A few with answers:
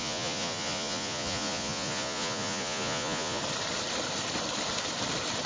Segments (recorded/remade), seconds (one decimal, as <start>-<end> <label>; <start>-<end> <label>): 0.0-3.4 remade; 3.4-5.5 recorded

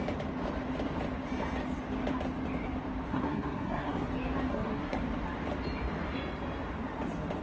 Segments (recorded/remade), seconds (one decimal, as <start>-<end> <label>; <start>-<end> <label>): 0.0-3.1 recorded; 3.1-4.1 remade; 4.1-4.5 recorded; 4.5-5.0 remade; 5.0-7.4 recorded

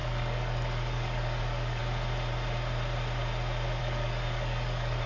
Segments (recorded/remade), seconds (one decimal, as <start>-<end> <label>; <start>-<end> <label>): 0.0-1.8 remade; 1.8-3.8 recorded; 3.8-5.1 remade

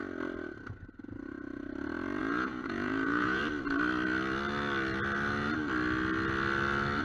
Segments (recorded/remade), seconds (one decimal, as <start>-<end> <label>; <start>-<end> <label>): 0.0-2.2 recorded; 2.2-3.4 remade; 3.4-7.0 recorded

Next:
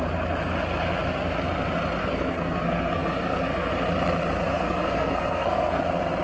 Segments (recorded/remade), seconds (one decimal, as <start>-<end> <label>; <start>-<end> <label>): 0.0-2.0 recorded; 2.0-3.7 remade; 3.7-4.5 recorded; 4.5-5.8 remade; 5.8-6.2 recorded

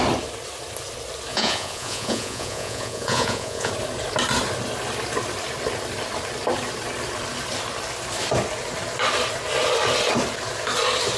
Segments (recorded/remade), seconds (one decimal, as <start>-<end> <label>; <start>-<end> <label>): 0.0-1.3 recorded; 1.3-3.7 remade; 3.7-11.2 recorded

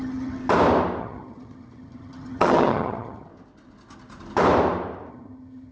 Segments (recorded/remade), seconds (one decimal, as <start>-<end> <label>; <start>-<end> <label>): 0.0-0.4 remade; 0.4-1.0 recorded; 1.0-3.3 remade; 3.3-5.1 recorded; 5.1-5.7 remade

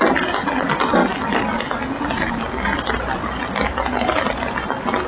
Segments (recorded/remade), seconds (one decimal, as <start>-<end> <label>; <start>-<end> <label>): 0.0-5.1 recorded